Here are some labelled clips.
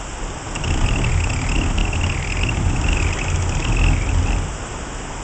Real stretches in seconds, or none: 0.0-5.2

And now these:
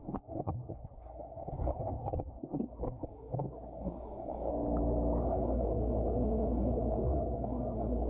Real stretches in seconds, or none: 4.5-5.2